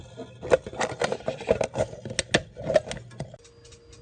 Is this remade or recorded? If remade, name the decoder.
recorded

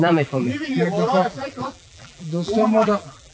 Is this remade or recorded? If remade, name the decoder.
remade, vocoder, BigVGAN v2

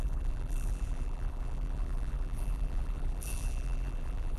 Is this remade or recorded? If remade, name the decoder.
remade, vocoder, BigVGAN v2